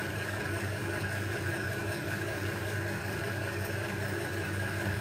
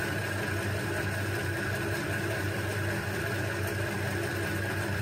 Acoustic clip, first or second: second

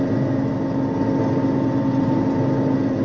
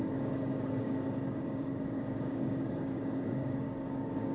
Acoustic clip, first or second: first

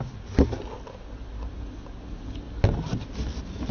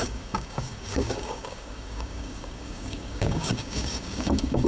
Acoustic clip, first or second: first